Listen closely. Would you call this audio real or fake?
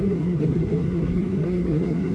fake